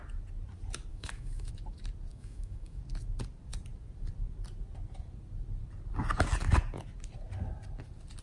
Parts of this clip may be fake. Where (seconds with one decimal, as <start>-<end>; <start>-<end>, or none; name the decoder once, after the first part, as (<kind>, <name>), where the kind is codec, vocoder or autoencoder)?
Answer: 0.9-1.5 (autoencoder, DAC-VAE); 2.1-2.8